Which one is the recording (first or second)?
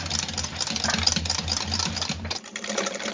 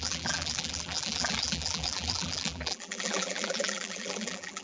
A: first